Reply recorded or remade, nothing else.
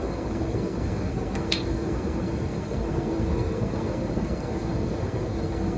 remade